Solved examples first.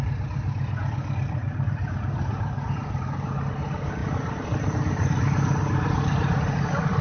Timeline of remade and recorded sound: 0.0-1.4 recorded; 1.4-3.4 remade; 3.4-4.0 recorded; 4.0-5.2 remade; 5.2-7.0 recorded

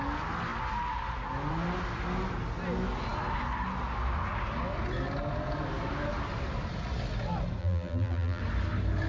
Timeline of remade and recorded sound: 0.0-7.6 recorded; 7.6-8.4 remade; 8.4-9.1 recorded

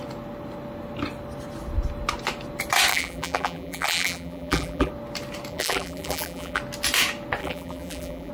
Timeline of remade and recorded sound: 0.0-2.9 recorded; 2.9-4.9 remade; 4.9-5.5 recorded; 5.5-6.6 remade; 6.6-7.4 recorded; 7.4-8.3 remade

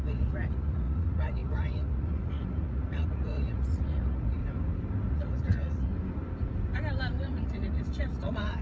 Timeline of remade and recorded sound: 0.0-4.4 remade; 4.4-5.1 recorded; 5.1-5.9 remade; 5.9-7.2 recorded; 7.2-8.6 remade

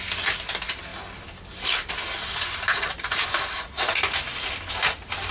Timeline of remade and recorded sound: 0.0-5.3 recorded